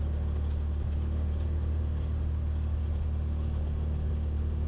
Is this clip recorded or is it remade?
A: recorded